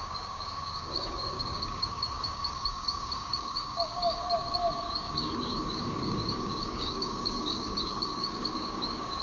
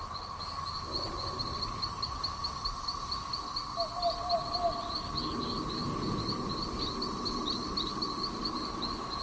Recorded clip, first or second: second